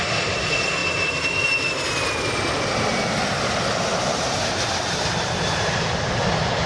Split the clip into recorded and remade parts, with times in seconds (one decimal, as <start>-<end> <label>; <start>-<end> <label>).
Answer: 0.0-3.9 recorded; 3.9-5.8 remade; 5.8-6.7 recorded